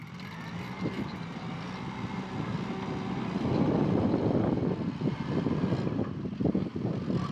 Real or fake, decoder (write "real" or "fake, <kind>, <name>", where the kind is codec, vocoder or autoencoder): fake, vocoder, BigVGAN v2